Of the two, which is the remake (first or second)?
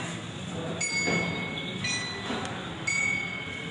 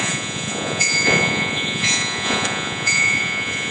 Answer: second